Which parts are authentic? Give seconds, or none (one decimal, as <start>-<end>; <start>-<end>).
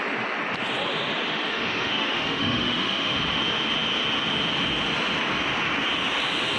0.0-1.5; 3.1-6.6